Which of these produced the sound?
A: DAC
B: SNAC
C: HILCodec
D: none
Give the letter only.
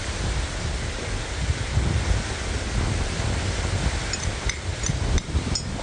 D